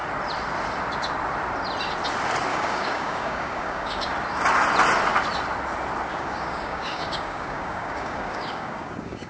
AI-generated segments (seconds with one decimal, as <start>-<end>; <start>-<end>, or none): 2.5-4.1; 6.1-9.3